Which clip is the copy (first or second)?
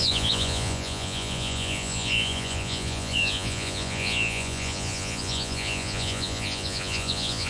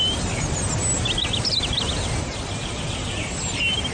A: first